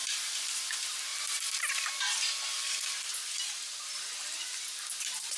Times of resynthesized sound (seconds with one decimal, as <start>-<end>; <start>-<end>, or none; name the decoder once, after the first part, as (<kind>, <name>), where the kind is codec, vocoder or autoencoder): 0.0-0.6 (vocoder, BigVGAN v2); 1.1-1.7; 2.5-3.1